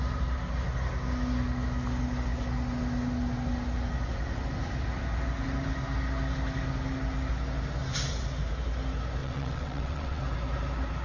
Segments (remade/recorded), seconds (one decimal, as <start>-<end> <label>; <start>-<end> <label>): 0.0-9.2 recorded; 9.2-10.2 remade; 10.2-11.0 recorded